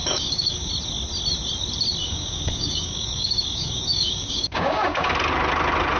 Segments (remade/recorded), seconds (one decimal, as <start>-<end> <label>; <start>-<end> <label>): 0.0-0.7 remade; 0.7-2.0 recorded; 2.0-5.1 remade; 5.1-6.0 recorded